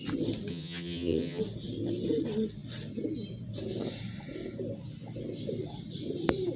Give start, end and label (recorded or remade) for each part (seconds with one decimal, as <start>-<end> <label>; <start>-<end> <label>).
0.0-0.5 recorded; 0.5-1.4 remade; 1.4-6.6 recorded